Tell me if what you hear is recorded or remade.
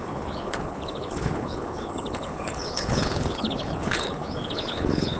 remade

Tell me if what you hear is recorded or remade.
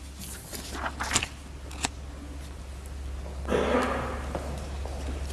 recorded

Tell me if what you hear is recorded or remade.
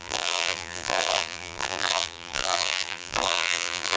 remade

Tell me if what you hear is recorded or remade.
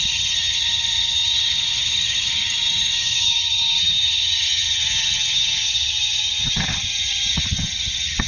remade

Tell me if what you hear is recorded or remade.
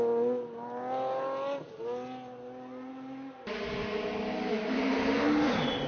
recorded